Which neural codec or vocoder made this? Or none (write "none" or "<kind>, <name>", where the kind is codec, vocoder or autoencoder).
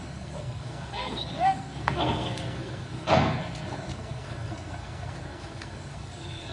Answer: codec, SNAC